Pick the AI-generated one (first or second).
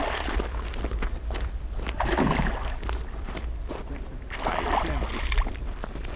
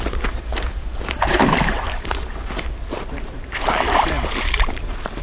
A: second